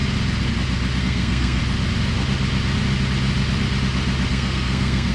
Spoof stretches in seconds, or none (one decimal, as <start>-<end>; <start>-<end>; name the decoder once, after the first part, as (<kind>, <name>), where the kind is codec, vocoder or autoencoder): 1.0-1.6 (codec, SNAC); 4.3-5.1